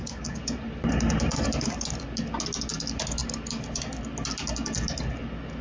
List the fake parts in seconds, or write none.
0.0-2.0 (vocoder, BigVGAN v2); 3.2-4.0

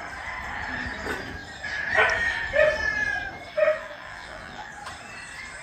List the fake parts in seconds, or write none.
3.7-4.7 (vocoder, BigVGAN v2)